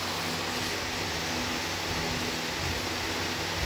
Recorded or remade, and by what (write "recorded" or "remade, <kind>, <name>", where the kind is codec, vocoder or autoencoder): recorded